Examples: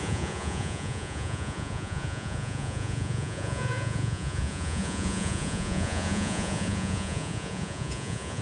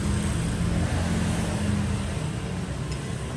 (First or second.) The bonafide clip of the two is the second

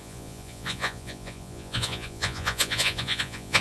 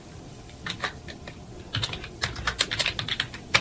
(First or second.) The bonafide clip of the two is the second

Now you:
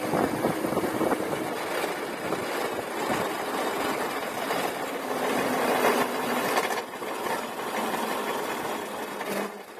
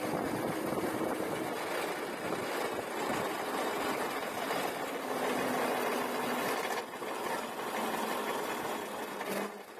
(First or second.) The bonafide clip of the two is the second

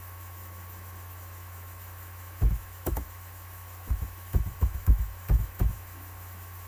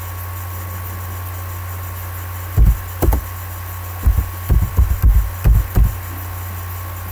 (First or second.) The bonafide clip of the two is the second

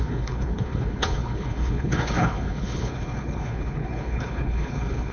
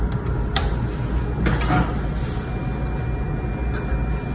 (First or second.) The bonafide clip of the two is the second